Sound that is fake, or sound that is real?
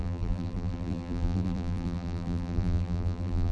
fake